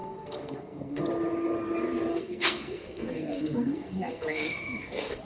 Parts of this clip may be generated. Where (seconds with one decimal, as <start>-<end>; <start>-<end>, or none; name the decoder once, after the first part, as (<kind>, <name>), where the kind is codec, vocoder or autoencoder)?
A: 0.0-1.0 (codec, SNAC); 2.1-5.2